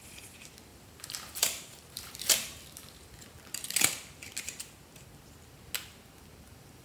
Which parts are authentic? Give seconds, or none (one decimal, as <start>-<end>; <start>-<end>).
0.0-0.7; 2.1-6.8